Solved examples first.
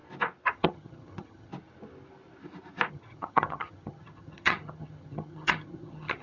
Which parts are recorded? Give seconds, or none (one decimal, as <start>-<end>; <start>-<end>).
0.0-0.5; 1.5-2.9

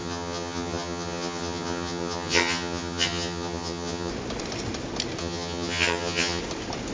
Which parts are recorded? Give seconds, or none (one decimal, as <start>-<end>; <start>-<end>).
4.1-5.2; 6.4-6.9

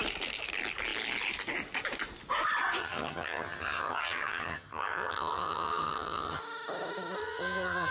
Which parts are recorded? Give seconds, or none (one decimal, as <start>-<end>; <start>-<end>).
0.0-2.8; 6.4-7.2

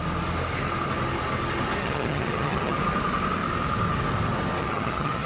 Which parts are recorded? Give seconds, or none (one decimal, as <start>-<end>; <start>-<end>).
0.0-1.8; 2.8-4.6